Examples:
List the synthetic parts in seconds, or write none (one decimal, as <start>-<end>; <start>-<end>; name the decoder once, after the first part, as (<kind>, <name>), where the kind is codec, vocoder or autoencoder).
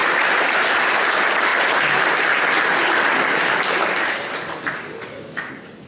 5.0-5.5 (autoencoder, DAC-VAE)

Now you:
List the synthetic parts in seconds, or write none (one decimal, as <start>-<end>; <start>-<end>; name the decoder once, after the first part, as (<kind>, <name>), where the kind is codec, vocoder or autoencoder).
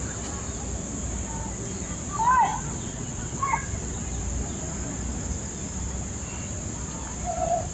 2.5-4.1 (vocoder, WaveNeXt)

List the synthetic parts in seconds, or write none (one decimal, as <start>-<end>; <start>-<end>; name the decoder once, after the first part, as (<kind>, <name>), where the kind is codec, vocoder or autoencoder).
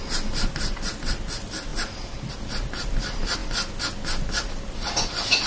none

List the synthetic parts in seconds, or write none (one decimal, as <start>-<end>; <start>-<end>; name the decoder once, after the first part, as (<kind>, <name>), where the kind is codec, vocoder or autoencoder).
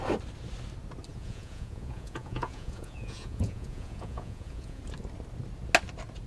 1.1-4.8 (vocoder, Vocos)